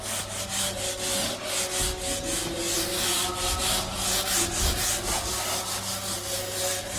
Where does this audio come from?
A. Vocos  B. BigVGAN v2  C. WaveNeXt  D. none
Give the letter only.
D